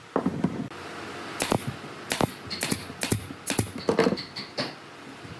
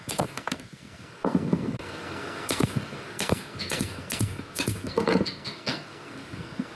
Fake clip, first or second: second